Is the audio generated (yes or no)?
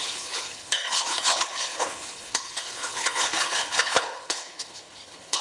yes